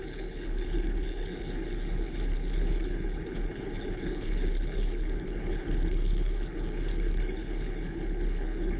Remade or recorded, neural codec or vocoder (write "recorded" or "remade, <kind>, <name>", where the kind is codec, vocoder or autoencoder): remade, codec, HILCodec